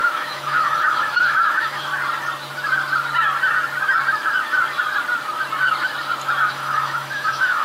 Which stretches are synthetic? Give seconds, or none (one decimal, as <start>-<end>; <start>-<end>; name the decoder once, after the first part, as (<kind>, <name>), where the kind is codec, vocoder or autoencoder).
0.0-1.9 (autoencoder, DAC-VAE); 6.5-7.6